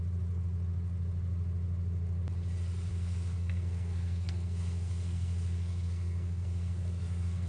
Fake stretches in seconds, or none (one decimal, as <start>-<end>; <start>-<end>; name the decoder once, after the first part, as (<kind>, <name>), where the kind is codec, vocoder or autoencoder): 2.9-7.5 (codec, SNAC)